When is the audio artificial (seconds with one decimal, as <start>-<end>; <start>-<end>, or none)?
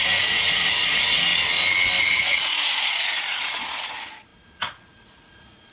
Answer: 0.0-1.3; 2.0-5.7